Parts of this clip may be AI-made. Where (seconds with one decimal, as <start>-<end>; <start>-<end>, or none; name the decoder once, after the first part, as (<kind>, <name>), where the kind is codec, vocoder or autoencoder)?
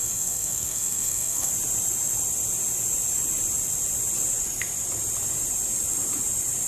0.0-1.5 (codec, SNAC)